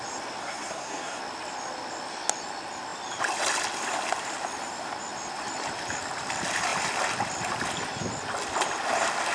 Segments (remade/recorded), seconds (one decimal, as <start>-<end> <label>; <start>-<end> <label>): 0.0-0.4 recorded; 0.4-1.2 remade; 1.2-9.3 recorded